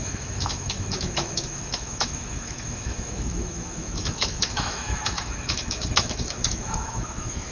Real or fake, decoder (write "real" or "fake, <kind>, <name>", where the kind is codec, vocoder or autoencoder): fake, autoencoder, DAC-VAE